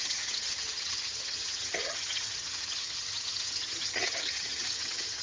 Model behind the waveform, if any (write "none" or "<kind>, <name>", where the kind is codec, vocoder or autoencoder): vocoder, HiFi-GAN